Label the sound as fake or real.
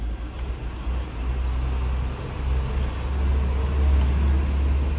real